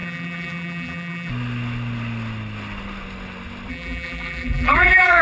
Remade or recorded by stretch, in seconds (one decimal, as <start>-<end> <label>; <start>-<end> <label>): 0.0-1.3 remade; 1.3-3.7 recorded; 3.7-5.2 remade